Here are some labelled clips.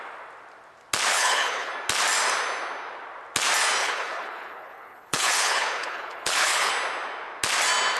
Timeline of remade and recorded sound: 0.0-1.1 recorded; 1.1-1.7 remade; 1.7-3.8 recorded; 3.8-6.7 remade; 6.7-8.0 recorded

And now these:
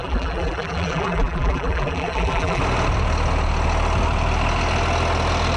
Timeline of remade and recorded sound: 0.0-2.6 remade; 2.6-5.6 recorded

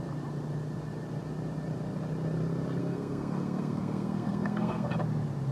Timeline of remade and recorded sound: 0.0-2.8 recorded; 2.8-4.9 remade; 4.9-5.5 recorded

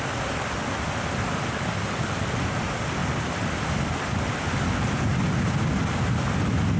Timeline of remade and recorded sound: 0.0-6.8 recorded

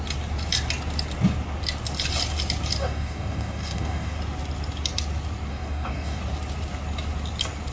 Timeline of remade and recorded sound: 0.0-2.8 recorded; 2.8-4.2 remade; 4.2-5.5 recorded; 5.5-6.2 remade; 6.2-7.7 recorded

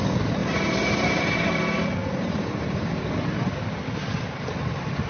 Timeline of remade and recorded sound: 0.0-0.4 recorded; 0.4-1.6 remade; 1.6-2.0 recorded; 2.0-3.9 remade; 3.9-5.1 recorded